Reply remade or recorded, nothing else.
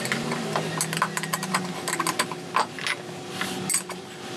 recorded